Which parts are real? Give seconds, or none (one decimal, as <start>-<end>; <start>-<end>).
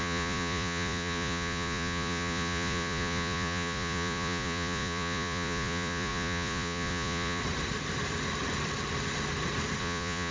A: 7.4-9.8